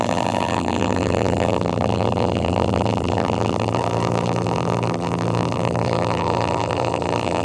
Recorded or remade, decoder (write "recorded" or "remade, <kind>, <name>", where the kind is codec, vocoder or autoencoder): remade, vocoder, BigVGAN v2